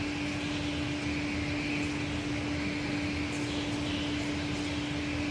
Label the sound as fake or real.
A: real